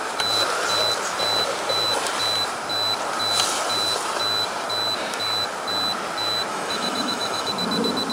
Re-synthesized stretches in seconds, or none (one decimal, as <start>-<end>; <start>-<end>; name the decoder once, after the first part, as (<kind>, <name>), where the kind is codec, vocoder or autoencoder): 6.5-7.5 (autoencoder, DAC-VAE)